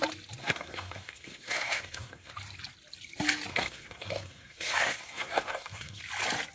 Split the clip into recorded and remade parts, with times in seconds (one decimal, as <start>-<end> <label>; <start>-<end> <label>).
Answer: 0.0-0.4 recorded; 0.4-2.3 remade; 2.3-3.5 recorded; 3.5-6.0 remade; 6.0-6.5 recorded